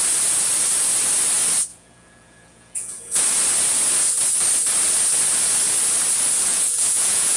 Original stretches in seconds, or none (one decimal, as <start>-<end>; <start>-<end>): 0.0-1.7; 3.2-6.5